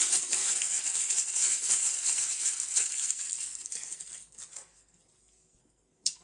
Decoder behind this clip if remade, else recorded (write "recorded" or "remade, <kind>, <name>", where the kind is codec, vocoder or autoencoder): remade, codec, SNAC